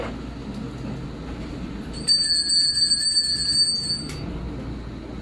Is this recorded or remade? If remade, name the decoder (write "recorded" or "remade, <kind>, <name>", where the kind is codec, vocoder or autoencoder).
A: recorded